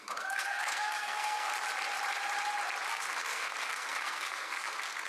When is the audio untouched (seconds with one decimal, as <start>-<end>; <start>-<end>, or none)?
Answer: 1.5-2.9